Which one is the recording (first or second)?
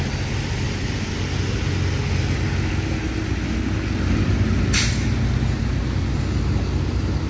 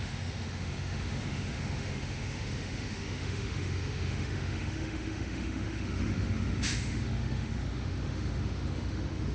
first